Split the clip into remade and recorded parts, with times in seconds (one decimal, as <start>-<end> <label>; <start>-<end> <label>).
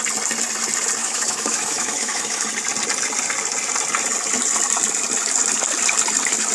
0.0-1.0 recorded; 1.0-2.5 remade; 2.5-6.5 recorded